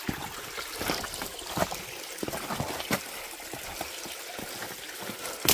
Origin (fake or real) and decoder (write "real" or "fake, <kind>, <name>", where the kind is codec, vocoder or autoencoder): real